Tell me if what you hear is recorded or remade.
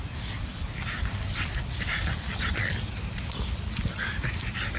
recorded